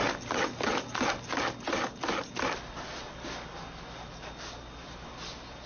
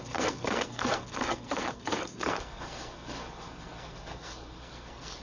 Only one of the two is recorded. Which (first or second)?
first